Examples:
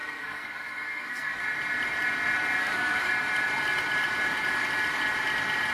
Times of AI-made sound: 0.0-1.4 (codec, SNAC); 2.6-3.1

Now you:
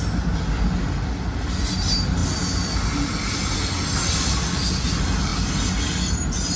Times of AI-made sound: none

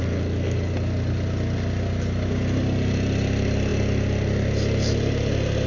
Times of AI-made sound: none

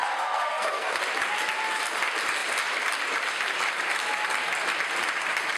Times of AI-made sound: 0.0-1.0 (codec, SNAC)

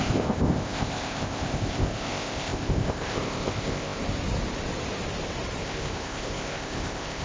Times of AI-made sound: 0.0-4.0 (codec, ZipCodec); 5.6-7.2

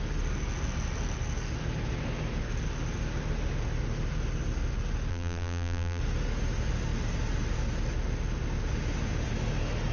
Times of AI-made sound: 5.1-6.0 (vocoder, BigVGAN v2)

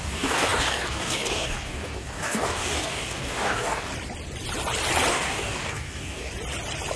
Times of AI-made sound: 0.0-3.9 (codec, DAC); 5.1-6.3